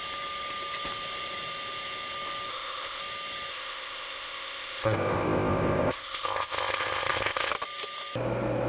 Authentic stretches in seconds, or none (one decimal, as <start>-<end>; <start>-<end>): 0.0-2.5; 3.0-3.5; 7.5-8.7